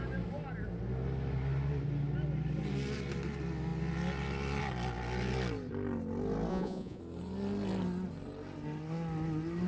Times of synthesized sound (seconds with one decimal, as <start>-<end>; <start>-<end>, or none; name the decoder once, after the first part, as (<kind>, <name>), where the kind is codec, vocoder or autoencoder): 6.5-7.0 (vocoder, Vocos)